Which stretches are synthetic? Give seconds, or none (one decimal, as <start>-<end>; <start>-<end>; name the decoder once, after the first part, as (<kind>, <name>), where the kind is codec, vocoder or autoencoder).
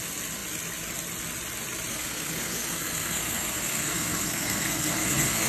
1.9-5.5 (codec, SNAC)